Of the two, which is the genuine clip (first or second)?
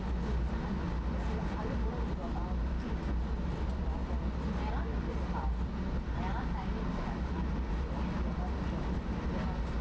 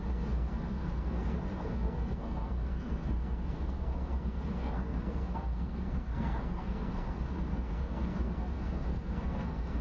first